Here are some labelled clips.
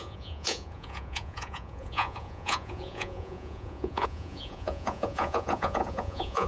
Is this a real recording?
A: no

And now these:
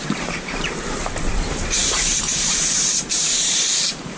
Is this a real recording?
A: no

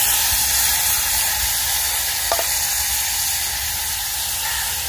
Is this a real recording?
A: yes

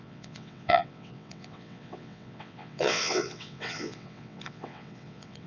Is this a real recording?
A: no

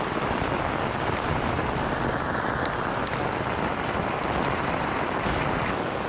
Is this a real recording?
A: yes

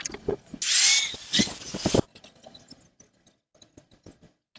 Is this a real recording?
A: yes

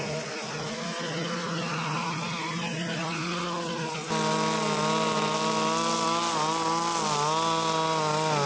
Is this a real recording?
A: yes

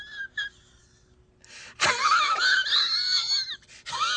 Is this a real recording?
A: yes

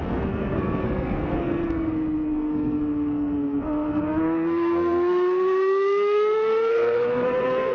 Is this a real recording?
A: no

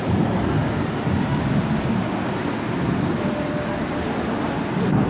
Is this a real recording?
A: yes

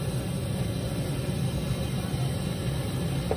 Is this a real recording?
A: yes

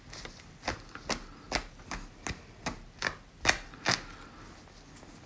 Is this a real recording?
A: yes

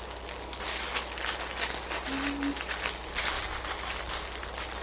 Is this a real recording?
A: yes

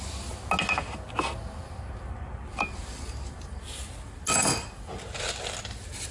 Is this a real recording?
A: yes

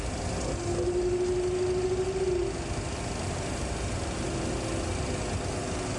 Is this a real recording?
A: yes